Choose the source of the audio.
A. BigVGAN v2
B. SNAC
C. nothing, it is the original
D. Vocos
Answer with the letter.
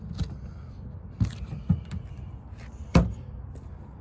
C